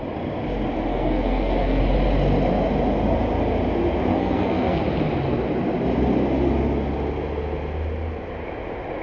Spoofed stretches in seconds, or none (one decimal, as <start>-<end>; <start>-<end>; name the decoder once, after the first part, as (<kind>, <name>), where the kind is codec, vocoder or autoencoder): 0.9-1.8 (codec, SNAC); 4.1-4.8